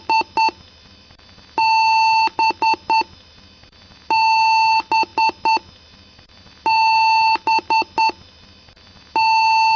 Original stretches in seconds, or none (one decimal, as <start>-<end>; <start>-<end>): 0.0-9.8

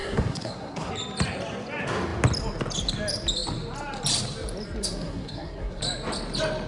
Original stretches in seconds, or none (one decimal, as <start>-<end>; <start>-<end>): 0.9-4.8; 5.8-6.7

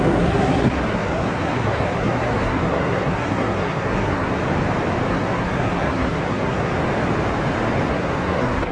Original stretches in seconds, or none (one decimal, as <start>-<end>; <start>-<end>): 4.4-5.1; 6.7-7.9

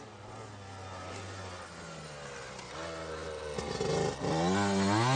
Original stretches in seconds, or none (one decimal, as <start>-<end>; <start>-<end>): 0.0-5.2